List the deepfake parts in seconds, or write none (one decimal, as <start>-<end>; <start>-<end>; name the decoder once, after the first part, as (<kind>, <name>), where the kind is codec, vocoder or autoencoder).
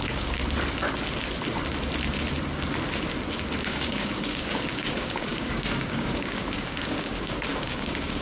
0.0-0.4 (codec, DAC); 3.6-8.2